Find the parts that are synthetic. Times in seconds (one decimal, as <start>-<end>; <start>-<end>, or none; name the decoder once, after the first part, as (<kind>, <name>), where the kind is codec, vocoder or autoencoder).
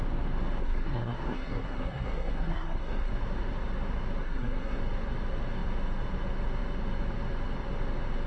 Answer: 0.6-3.1 (codec, SNAC); 4.2-4.8